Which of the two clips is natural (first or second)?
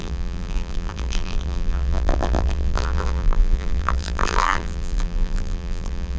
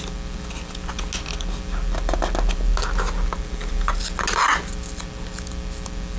second